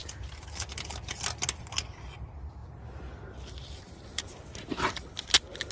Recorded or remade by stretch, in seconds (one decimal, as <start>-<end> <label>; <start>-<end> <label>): 0.0-5.7 recorded